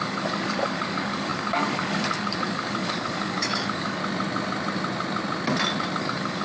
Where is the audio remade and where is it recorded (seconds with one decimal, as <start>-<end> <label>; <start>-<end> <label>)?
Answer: 0.0-4.0 remade; 4.0-6.0 recorded; 6.0-6.4 remade